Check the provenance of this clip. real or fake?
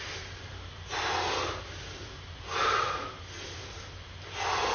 real